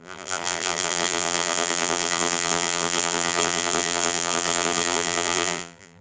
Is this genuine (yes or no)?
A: no